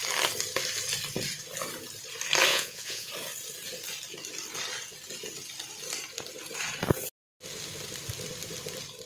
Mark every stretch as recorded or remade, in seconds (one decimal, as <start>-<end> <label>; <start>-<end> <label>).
0.0-2.5 recorded; 2.5-3.1 remade; 3.1-9.1 recorded